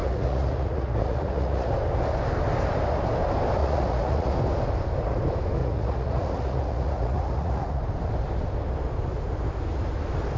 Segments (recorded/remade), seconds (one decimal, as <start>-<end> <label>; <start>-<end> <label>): 0.0-1.7 remade; 1.7-3.6 recorded; 3.6-4.3 remade; 4.3-5.6 recorded; 5.6-7.8 remade; 7.8-10.4 recorded